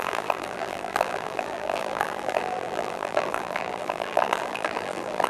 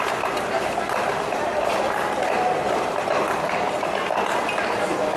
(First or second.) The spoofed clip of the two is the first